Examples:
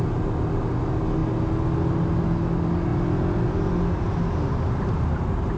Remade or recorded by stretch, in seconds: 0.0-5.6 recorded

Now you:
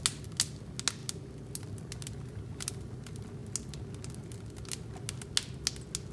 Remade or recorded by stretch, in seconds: 0.0-6.1 recorded

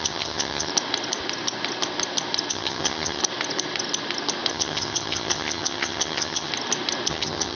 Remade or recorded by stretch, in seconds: 0.0-0.7 remade; 0.7-2.5 recorded; 2.5-3.2 remade; 3.2-4.5 recorded; 4.5-6.5 remade; 6.5-7.1 recorded; 7.1-7.5 remade

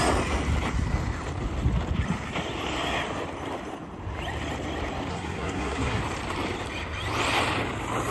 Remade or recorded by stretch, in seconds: 0.0-5.1 recorded; 5.1-6.0 remade; 6.0-8.1 recorded

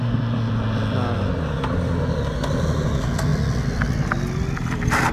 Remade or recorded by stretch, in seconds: 0.0-5.1 recorded

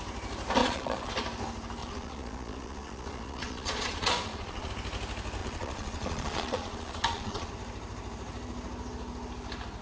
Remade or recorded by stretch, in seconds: 0.0-0.6 recorded; 0.6-1.1 remade; 1.1-1.8 recorded; 1.8-4.7 remade; 4.7-5.4 recorded; 5.4-7.5 remade; 7.5-9.8 recorded

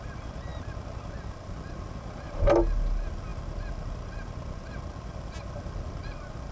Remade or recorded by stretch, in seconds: 0.0-6.5 recorded

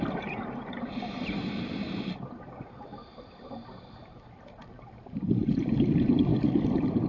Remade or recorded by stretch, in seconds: 0.0-6.3 remade; 6.3-7.1 recorded